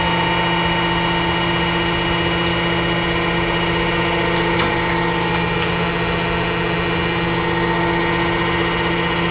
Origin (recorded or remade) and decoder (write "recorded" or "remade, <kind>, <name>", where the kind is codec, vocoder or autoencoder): recorded